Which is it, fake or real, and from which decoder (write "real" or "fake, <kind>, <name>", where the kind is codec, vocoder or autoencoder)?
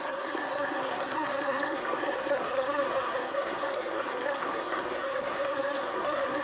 fake, codec, SNAC